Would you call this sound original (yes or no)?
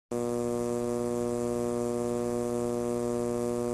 yes